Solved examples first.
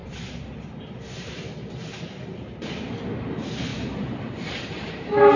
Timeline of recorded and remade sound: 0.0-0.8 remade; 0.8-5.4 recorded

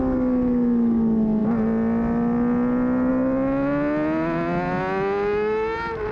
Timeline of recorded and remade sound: 0.0-6.1 recorded

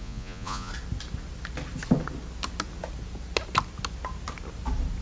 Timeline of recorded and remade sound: 0.0-0.7 remade; 0.7-5.0 recorded

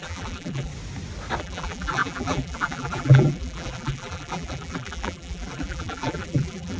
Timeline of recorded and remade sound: 0.0-0.7 remade; 0.7-1.4 recorded; 1.4-6.8 remade